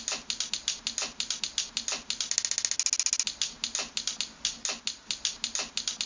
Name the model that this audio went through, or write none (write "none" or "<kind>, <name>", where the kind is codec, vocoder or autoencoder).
none